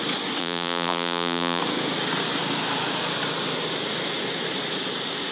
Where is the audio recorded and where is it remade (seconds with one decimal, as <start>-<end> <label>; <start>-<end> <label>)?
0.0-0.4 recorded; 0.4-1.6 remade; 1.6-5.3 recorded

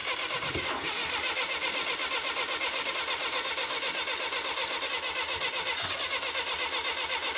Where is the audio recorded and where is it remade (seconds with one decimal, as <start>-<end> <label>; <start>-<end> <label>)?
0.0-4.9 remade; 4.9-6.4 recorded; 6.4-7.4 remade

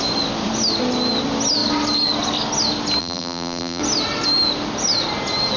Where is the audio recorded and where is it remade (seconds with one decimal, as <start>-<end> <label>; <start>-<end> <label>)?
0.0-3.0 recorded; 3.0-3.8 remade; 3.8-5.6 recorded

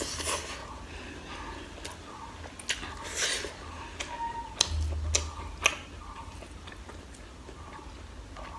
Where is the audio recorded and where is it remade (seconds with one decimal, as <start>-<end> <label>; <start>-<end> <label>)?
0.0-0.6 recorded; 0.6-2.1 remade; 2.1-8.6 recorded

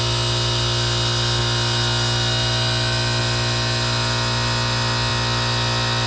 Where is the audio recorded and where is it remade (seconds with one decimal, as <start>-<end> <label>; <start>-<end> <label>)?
0.0-6.1 recorded

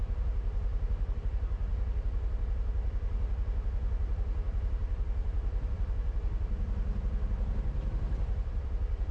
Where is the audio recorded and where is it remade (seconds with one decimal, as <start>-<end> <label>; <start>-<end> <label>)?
0.0-0.7 recorded; 0.7-1.2 remade; 1.2-4.8 recorded; 4.8-9.1 remade